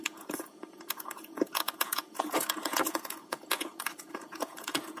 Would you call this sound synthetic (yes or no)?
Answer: yes